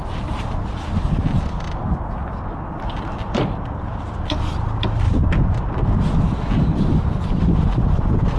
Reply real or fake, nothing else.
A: real